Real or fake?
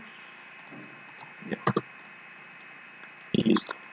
real